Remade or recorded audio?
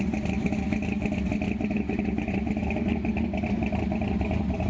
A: recorded